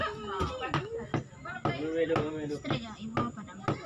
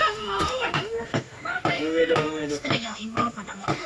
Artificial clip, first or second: second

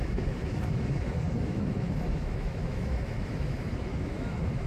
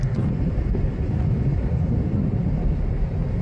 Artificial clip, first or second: first